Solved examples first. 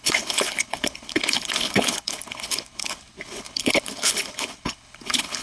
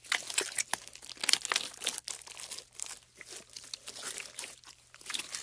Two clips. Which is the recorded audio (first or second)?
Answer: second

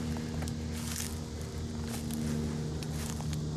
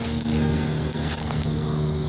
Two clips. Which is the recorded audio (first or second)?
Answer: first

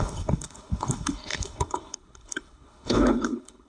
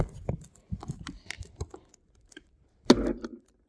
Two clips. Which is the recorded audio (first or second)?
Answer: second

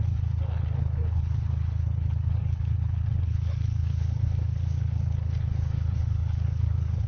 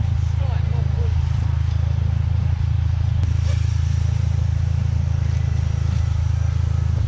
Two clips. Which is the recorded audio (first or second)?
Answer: second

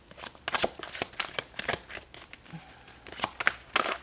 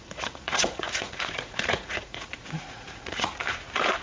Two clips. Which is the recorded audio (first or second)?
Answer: first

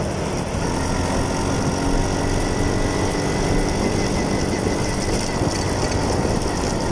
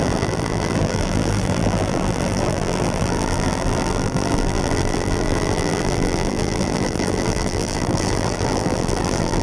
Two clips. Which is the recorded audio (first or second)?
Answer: first